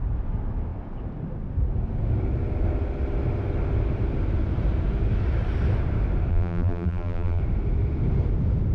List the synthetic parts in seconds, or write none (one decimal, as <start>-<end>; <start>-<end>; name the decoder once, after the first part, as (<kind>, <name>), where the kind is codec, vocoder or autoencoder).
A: 6.3-7.4 (vocoder, BigVGAN v2)